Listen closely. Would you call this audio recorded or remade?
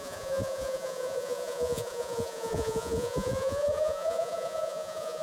remade